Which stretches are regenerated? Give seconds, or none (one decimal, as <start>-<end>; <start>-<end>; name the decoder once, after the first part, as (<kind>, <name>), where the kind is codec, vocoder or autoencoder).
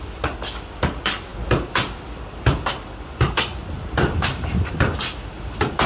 none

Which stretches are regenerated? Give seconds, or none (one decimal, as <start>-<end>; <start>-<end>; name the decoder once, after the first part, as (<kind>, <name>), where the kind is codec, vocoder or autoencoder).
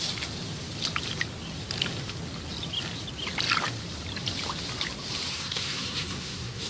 5.3-6.7 (codec, SNAC)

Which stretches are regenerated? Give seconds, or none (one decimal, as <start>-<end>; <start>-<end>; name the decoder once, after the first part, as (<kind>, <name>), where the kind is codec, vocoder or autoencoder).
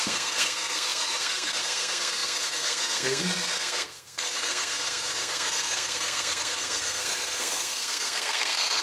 0.0-8.8 (codec, SNAC)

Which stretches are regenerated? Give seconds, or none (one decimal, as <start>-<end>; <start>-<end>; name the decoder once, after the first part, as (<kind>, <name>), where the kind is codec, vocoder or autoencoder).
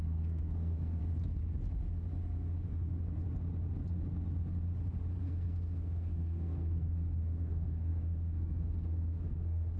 0.0-1.0 (codec, SNAC); 5.2-9.8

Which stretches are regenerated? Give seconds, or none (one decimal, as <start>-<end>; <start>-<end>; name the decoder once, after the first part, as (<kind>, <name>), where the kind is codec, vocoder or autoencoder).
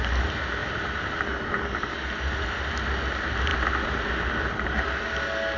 none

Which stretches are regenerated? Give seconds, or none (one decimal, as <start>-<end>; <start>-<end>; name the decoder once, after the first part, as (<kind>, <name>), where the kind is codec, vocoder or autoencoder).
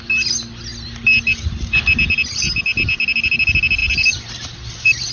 none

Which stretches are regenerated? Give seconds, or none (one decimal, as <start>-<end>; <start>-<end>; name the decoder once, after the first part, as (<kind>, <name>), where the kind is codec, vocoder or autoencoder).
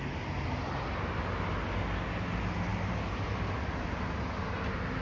none